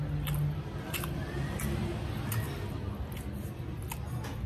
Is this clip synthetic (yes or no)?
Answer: no